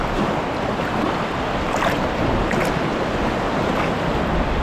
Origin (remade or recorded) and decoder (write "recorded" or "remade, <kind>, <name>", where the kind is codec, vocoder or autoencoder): recorded